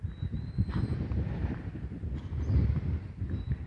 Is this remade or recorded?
recorded